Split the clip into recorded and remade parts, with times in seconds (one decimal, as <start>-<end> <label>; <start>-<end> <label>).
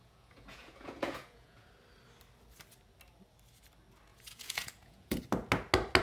0.0-1.7 remade; 1.7-4.1 recorded; 4.1-5.2 remade; 5.2-6.0 recorded